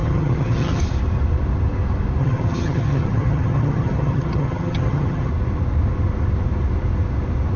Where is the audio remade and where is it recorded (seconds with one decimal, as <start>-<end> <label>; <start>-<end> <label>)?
0.0-0.8 remade; 0.8-2.2 recorded; 2.2-5.3 remade; 5.3-7.6 recorded